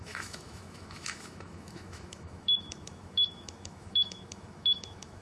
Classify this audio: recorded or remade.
remade